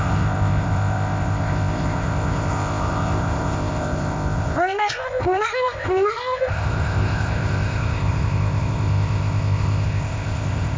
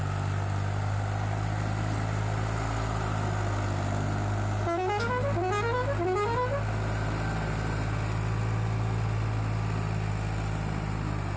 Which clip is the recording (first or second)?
second